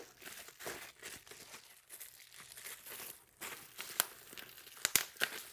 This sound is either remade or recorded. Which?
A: recorded